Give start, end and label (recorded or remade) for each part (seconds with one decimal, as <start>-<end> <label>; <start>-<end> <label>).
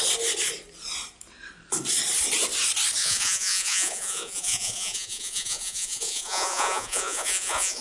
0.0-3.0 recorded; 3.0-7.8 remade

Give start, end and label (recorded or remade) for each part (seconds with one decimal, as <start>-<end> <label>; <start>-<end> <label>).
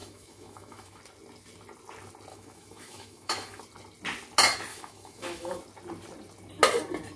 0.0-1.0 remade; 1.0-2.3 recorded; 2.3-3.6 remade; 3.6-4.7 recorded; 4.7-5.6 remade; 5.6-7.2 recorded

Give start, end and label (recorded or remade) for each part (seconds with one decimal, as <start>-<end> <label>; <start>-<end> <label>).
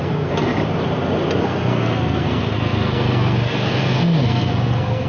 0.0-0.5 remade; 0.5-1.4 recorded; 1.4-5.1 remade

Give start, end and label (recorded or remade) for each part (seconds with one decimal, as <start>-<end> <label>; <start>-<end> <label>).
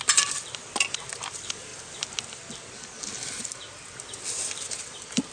0.0-5.3 recorded